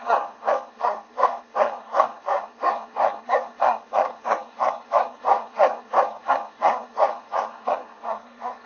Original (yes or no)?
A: no